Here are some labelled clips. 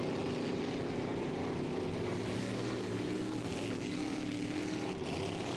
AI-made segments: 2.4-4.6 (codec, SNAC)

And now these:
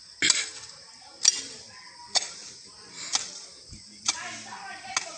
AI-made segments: none

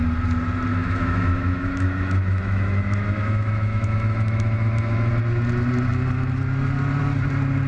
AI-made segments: 0.7-5.1 (autoencoder, DAC-VAE)

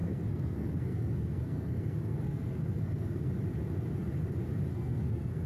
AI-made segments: 0.0-3.3 (codec, SNAC); 4.7-5.5

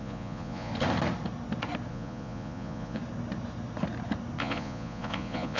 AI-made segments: 0.0-0.7 (vocoder, Vocos); 1.9-3.0; 4.4-5.6

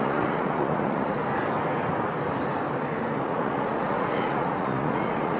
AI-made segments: 0.0-1.2 (vocoder, Vocos); 3.2-5.4